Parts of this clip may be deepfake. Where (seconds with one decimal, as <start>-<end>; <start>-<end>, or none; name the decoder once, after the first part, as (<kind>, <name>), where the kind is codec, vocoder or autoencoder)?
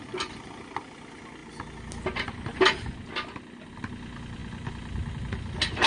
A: none